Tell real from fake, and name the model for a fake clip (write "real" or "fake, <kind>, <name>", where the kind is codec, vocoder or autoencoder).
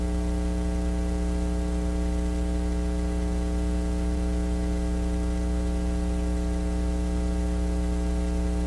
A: real